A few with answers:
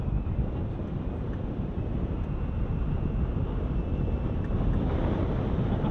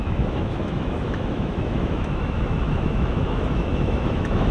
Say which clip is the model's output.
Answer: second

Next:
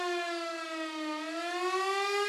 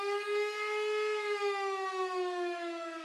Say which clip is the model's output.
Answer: second